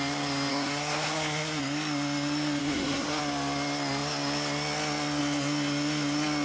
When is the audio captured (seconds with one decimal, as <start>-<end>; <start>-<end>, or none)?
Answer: 0.0-0.5; 1.6-2.6; 3.2-6.4